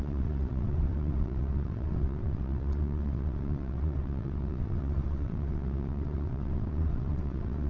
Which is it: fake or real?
fake